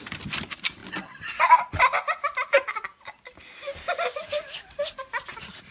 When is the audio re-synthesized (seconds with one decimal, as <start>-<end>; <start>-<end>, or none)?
none